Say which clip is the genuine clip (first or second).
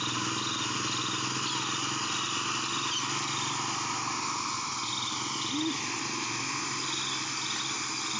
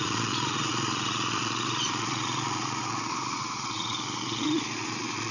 first